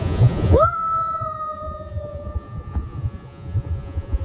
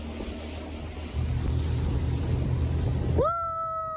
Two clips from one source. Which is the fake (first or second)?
first